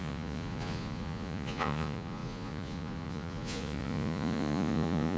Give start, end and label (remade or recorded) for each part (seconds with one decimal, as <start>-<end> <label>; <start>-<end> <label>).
0.0-5.2 remade